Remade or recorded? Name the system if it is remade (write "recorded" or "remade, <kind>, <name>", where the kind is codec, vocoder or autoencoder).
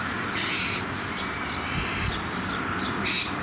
recorded